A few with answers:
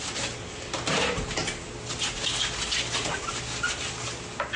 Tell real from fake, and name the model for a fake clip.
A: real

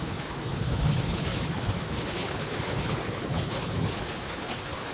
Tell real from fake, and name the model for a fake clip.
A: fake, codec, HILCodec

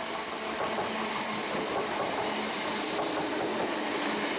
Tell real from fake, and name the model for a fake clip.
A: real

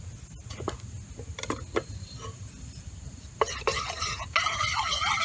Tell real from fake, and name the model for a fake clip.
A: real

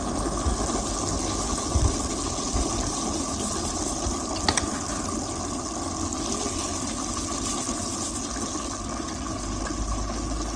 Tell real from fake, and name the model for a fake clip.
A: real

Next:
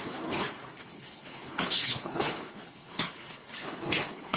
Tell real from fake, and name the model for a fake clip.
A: fake, codec, HILCodec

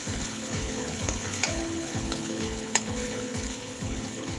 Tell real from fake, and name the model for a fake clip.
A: fake, codec, HILCodec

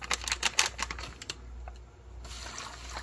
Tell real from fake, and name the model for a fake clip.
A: real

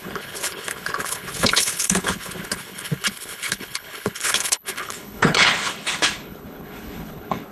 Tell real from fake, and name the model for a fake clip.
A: fake, codec, HILCodec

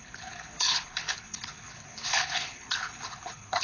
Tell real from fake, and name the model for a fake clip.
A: fake, codec, HILCodec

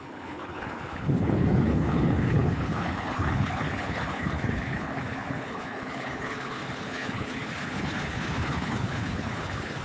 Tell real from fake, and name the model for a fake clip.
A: fake, codec, HILCodec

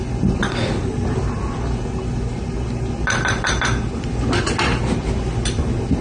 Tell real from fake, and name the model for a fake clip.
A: real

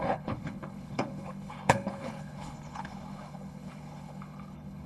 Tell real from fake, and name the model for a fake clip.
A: fake, codec, HILCodec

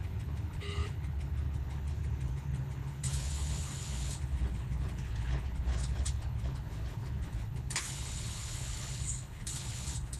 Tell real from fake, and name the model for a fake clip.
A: fake, codec, HILCodec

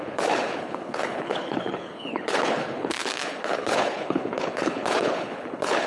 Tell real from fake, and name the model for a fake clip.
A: fake, codec, HILCodec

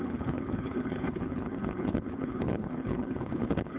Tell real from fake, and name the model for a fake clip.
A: fake, codec, HILCodec